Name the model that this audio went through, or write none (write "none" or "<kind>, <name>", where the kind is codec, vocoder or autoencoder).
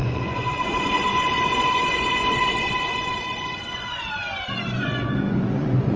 vocoder, Vocos